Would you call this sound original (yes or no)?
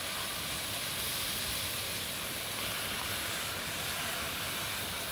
no